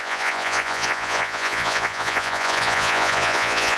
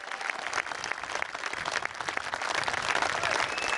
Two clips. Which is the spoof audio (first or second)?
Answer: first